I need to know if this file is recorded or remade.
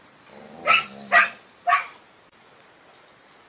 recorded